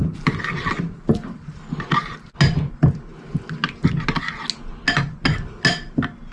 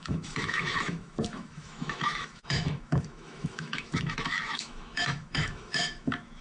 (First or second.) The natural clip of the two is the first